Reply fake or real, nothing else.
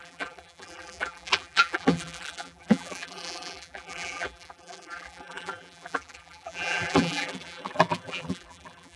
fake